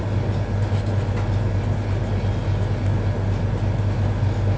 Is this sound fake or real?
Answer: real